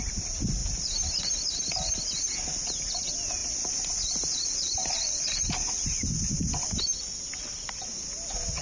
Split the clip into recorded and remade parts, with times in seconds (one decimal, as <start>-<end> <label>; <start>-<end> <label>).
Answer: 0.0-8.6 recorded